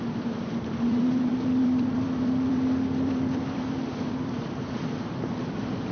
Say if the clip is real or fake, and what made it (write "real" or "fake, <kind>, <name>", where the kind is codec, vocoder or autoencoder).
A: fake, vocoder, BigVGAN v2